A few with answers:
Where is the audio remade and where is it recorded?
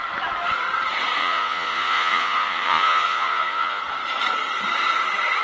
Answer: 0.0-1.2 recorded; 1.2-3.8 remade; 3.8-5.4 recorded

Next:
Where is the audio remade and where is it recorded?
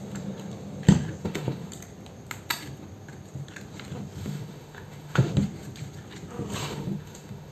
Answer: 0.0-1.2 recorded; 1.2-1.7 remade; 1.7-4.2 recorded; 4.2-5.3 remade; 5.3-6.6 recorded; 6.6-7.5 remade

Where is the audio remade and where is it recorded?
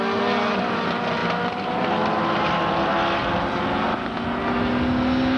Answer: 0.0-5.4 recorded